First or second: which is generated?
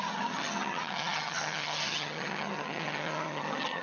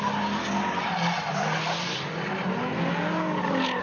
first